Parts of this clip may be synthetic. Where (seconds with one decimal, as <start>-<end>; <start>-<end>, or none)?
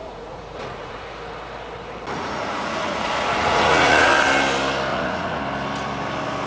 0.0-1.0; 2.2-4.1; 4.9-5.4